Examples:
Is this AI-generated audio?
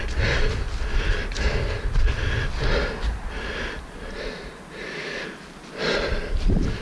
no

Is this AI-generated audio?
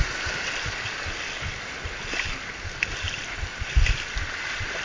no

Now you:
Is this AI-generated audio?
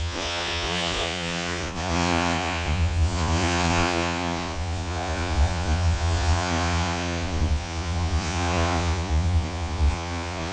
yes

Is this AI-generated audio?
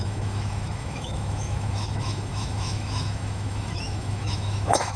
yes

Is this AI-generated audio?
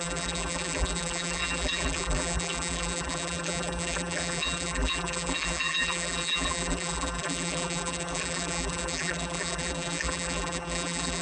yes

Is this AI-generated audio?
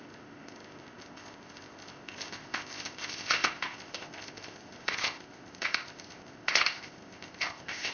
yes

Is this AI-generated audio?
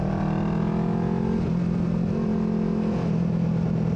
no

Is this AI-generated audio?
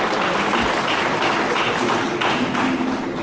no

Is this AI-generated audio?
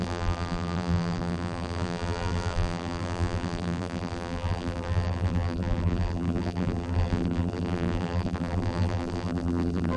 yes